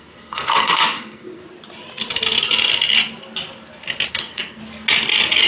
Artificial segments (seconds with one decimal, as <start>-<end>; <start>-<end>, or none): 0.0-1.4; 4.1-4.6